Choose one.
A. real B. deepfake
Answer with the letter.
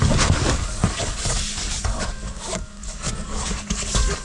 B